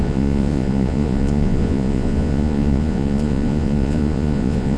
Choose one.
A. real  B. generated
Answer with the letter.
B